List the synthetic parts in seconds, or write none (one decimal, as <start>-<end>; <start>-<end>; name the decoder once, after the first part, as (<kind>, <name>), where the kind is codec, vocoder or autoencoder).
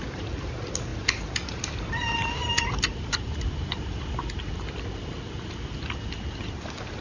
0.9-4.0 (vocoder, BigVGAN v2)